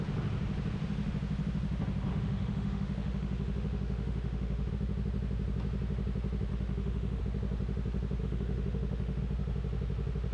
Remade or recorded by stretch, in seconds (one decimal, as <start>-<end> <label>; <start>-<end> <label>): 0.0-2.1 recorded; 2.1-4.7 remade; 4.7-6.5 recorded; 6.5-7.2 remade; 7.2-8.2 recorded; 8.2-9.2 remade; 9.2-10.3 recorded